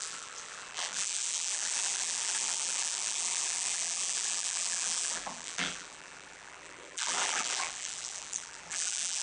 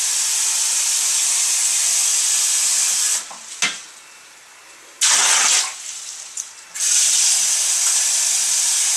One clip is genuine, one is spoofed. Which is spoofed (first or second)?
first